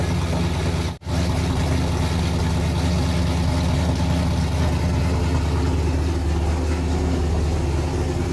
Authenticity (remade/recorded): recorded